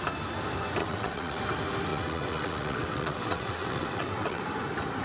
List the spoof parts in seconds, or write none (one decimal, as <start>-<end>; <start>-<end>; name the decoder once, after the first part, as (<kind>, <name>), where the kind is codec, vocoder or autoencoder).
0.8-1.4 (vocoder, WaveNeXt); 1.9-4.4